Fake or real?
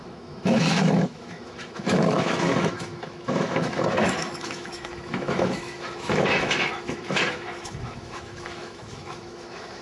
fake